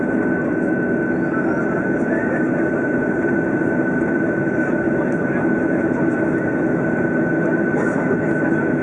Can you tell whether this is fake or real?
real